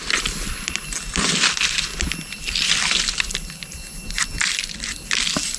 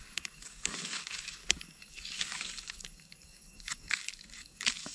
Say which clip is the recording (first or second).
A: first